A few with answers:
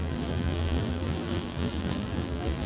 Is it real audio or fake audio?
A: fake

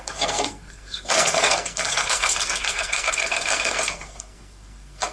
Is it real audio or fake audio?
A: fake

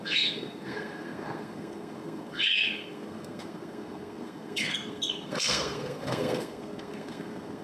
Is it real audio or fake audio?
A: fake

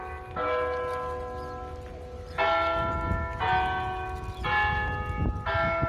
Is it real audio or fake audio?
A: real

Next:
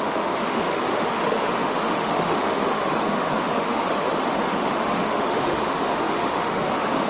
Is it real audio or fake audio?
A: fake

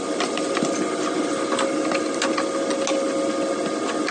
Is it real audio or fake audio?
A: real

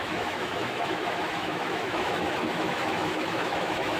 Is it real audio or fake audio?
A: fake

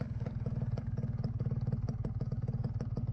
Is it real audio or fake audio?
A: fake